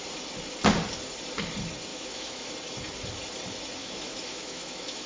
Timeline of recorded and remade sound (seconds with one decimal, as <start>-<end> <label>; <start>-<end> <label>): 0.0-1.9 recorded; 1.9-2.5 remade; 2.5-3.8 recorded; 3.8-5.1 remade